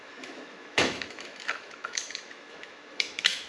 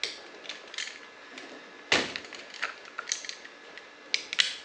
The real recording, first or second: second